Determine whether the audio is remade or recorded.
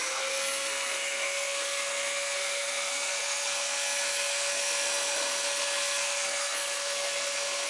remade